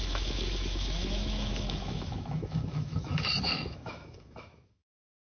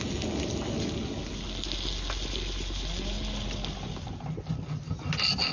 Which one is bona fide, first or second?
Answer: second